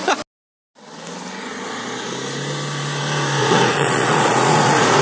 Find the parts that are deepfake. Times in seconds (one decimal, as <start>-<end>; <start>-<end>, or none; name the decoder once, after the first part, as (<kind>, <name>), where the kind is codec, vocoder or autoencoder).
3.4-5.0 (vocoder, Vocos)